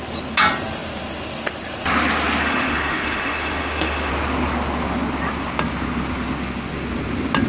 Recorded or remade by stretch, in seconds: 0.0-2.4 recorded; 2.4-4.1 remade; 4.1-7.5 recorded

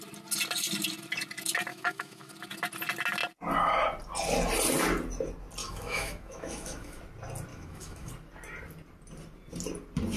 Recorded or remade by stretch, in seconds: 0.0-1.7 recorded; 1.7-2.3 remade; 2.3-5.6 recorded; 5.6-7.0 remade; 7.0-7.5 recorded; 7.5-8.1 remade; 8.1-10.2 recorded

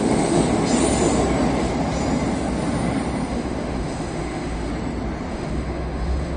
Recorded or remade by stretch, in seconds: 0.0-0.4 remade; 0.4-3.3 recorded; 3.3-4.7 remade; 4.7-5.3 recorded; 5.3-6.4 remade

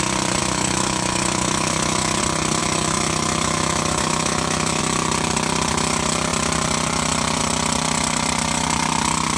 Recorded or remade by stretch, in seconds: 0.0-0.4 recorded; 0.4-2.2 remade; 2.2-2.6 recorded; 2.6-4.8 remade; 4.8-9.4 recorded

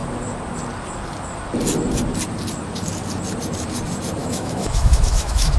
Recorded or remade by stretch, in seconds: 0.0-4.2 recorded; 4.2-5.6 remade

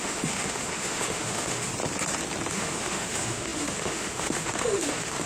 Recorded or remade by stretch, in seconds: 0.0-1.7 remade; 1.7-2.5 recorded; 2.5-5.3 remade

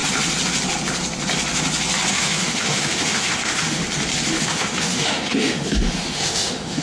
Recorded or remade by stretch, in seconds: 0.0-2.1 recorded; 2.1-3.8 remade; 3.8-4.4 recorded; 4.4-6.8 remade